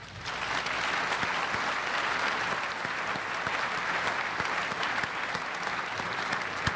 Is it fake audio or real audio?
real